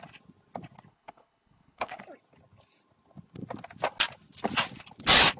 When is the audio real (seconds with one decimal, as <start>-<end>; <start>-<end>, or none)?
0.0-0.9; 2.0-5.4